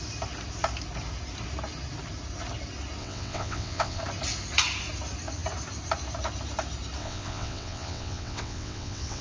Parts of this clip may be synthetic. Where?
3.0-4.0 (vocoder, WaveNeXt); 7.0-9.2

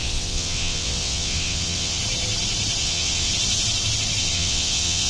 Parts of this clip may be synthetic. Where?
0.0-2.0 (vocoder, WaveNeXt); 2.8-3.3; 4.2-5.1

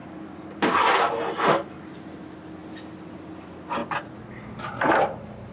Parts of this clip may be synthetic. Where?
none